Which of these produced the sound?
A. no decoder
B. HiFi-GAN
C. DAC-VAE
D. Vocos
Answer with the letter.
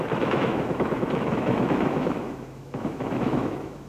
C